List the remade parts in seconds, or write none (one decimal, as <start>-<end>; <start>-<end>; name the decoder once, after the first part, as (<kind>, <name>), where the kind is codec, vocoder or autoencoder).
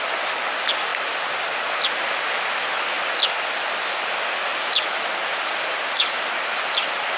none